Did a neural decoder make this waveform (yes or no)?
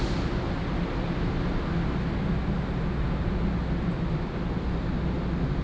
no